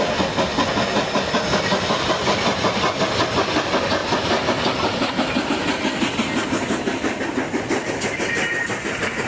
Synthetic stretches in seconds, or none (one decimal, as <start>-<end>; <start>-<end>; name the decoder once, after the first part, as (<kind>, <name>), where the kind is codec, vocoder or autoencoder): none